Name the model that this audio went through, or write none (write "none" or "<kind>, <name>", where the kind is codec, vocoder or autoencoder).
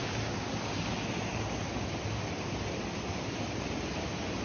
none